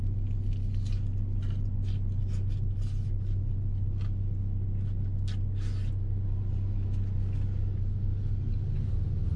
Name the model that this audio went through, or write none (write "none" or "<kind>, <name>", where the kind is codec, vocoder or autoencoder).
none